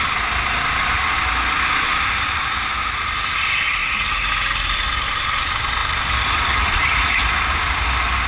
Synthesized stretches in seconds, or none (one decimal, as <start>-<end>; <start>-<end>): 3.8-4.3